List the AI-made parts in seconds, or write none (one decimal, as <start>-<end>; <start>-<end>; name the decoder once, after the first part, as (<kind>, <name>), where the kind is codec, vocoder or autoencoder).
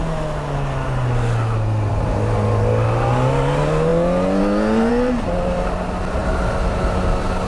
none